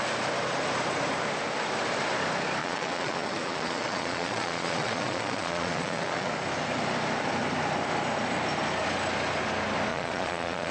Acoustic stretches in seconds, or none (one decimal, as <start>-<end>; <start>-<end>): 0.0-2.6; 6.3-9.9